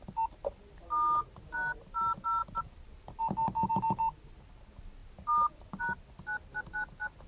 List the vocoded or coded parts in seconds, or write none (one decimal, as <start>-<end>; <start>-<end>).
1.2-2.0